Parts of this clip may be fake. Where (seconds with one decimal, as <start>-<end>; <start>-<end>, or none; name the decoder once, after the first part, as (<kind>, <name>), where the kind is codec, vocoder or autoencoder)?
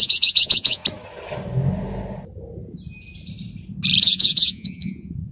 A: 0.0-0.8 (vocoder, Vocos); 4.0-5.3